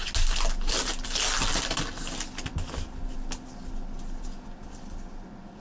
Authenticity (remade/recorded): recorded